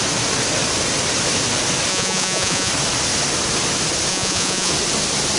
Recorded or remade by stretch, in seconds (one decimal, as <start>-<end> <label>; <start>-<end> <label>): 0.0-1.9 recorded; 1.9-2.7 remade; 2.7-4.1 recorded; 4.1-4.7 remade; 4.7-5.4 recorded